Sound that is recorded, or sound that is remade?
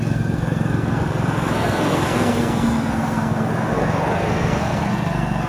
remade